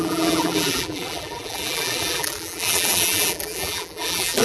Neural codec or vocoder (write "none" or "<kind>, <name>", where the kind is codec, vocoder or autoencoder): vocoder, BigVGAN v2